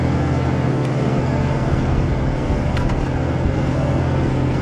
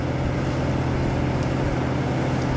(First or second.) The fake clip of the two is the first